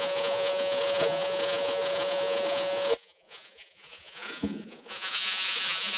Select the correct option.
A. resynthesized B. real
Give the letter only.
A